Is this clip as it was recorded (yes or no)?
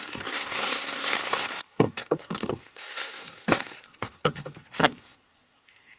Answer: no